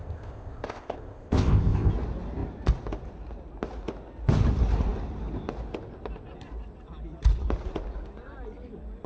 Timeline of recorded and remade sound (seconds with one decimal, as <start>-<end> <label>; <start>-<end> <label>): 0.0-1.9 remade; 1.9-9.1 recorded